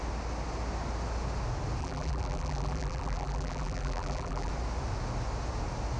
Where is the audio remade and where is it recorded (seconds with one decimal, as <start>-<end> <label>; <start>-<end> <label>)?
0.0-1.8 recorded; 1.8-4.5 remade; 4.5-6.0 recorded